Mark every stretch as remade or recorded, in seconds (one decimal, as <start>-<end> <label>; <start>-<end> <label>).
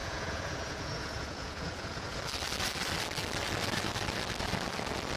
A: 0.0-2.2 remade; 2.2-5.2 recorded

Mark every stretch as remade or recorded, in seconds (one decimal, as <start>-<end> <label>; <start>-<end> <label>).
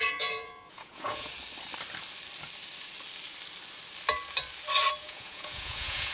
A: 0.0-1.3 remade; 1.3-5.0 recorded; 5.0-6.1 remade